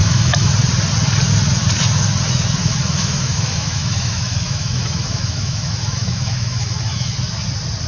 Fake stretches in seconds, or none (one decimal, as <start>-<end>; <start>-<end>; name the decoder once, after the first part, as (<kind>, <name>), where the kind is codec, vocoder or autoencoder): 0.0-0.5 (autoencoder, DAC-VAE); 2.6-7.1